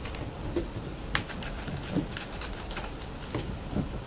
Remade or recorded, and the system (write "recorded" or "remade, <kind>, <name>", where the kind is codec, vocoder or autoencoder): recorded